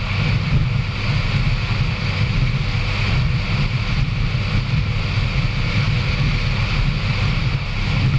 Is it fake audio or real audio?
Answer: real